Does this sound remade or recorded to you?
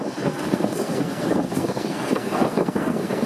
remade